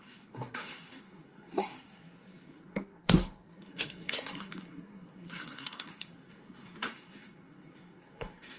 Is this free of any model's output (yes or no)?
no